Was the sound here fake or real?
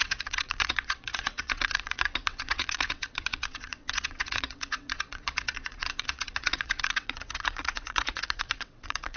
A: fake